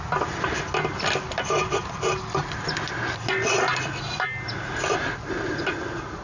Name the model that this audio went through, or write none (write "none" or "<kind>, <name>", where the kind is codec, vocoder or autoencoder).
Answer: none